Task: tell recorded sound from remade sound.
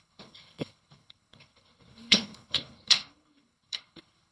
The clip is remade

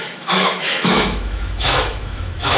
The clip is remade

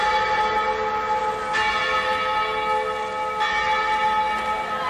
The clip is recorded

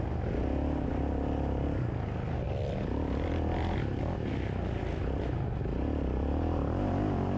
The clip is recorded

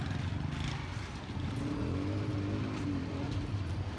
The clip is recorded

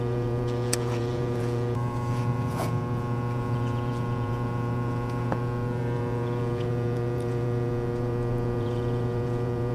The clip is remade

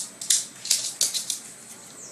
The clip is recorded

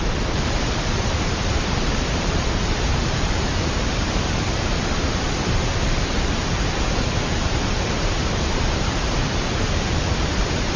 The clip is remade